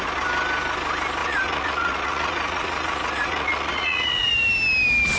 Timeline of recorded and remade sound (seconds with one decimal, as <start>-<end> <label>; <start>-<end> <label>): 0.0-1.2 recorded; 1.2-4.3 remade; 4.3-5.2 recorded